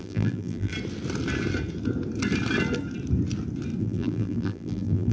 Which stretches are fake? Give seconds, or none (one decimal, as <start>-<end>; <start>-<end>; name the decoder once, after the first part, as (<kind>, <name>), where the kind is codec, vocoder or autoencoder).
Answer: 0.0-0.7 (vocoder, BigVGAN v2); 3.8-5.1